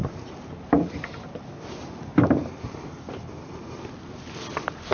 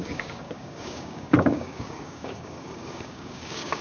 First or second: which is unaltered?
first